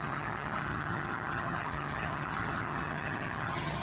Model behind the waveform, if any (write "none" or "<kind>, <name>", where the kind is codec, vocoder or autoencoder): vocoder, HiFi-GAN